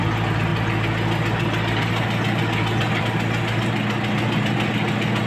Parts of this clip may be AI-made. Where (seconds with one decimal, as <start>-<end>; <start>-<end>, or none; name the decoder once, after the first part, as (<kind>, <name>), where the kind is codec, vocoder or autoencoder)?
none